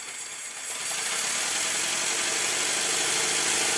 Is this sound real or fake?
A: real